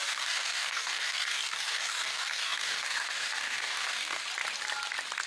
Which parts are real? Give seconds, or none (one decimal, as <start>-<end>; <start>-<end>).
4.2-5.3